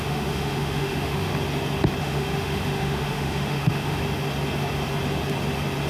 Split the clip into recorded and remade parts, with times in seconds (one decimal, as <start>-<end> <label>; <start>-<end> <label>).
0.0-1.3 remade; 1.3-2.0 recorded; 2.0-4.0 remade; 4.0-5.9 recorded